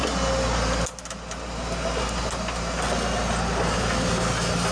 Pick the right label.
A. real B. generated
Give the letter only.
A